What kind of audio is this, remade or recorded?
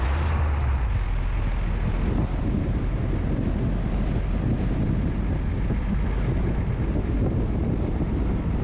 recorded